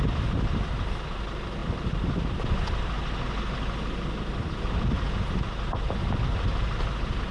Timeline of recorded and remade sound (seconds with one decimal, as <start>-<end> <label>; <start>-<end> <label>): 0.0-7.3 recorded